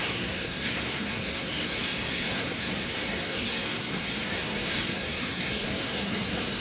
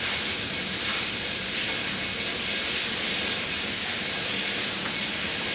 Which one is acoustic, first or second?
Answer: second